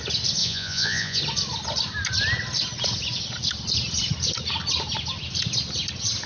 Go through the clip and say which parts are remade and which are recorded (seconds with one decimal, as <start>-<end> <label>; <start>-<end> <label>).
0.0-0.4 recorded; 0.4-1.2 remade; 1.2-6.3 recorded